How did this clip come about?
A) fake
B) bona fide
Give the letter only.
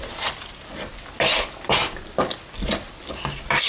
B